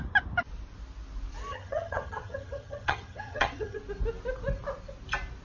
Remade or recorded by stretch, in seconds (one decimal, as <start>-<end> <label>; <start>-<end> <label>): 0.0-1.5 recorded; 1.5-3.8 remade; 3.8-5.4 recorded